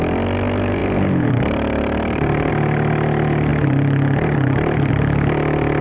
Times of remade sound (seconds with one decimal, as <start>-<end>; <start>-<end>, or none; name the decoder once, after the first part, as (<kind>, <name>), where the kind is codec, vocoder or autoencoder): none